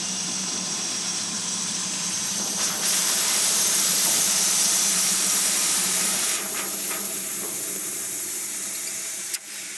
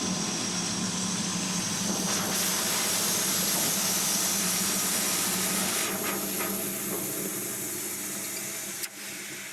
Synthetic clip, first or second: first